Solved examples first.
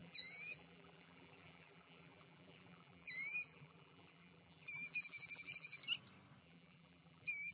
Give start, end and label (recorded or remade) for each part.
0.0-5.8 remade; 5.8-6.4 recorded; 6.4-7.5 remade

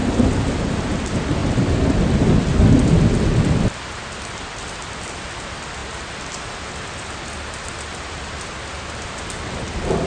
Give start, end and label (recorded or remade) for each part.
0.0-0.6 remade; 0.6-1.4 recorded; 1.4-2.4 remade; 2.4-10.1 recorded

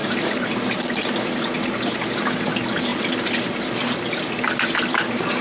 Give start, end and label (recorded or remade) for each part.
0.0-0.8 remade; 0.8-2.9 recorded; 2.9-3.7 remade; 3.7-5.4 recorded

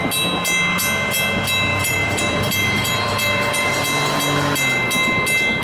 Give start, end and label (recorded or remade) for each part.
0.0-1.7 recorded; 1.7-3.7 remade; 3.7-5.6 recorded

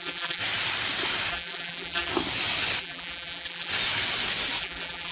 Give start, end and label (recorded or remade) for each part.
0.0-0.4 remade; 0.4-1.3 recorded; 1.3-2.1 remade; 2.1-2.8 recorded; 2.8-3.7 remade; 3.7-4.6 recorded; 4.6-5.1 remade

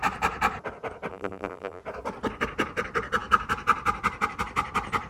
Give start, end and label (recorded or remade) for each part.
0.0-1.1 recorded; 1.1-1.8 remade; 1.8-5.1 recorded

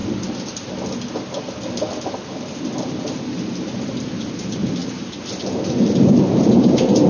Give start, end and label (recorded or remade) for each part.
0.0-4.3 recorded; 4.3-7.1 remade